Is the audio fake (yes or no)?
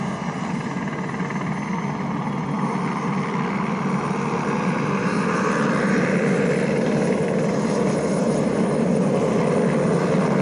no